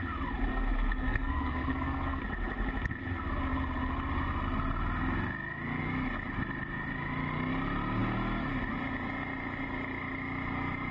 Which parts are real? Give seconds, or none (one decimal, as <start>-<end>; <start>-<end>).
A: 0.0-0.5; 2.2-10.9